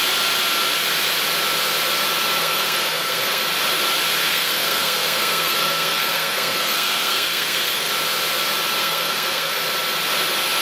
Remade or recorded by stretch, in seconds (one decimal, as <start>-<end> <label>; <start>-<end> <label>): 0.0-2.4 recorded; 2.4-3.4 remade; 3.4-4.2 recorded; 4.2-7.9 remade; 7.9-8.8 recorded; 8.8-9.5 remade; 9.5-10.6 recorded